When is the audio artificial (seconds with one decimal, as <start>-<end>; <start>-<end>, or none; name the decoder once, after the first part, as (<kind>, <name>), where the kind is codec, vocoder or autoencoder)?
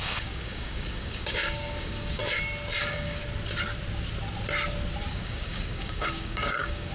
0.0-2.2 (codec, DAC); 2.8-3.2; 5.1-6.9